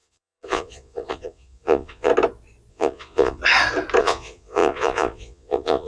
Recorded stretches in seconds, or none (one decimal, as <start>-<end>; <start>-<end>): 2.1-2.7; 3.4-4.0